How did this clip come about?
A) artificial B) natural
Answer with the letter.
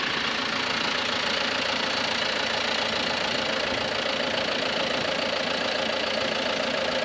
B